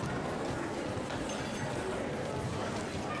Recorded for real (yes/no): yes